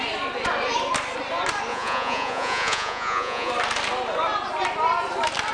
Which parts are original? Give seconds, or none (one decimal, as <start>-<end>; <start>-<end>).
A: 0.0-1.7; 3.5-5.5